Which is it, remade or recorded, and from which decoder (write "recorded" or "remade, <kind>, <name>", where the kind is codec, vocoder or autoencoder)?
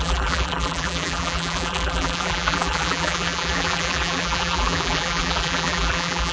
remade, vocoder, BigVGAN v2